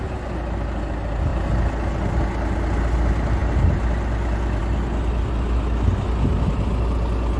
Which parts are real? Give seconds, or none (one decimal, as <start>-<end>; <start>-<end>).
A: 0.0-7.4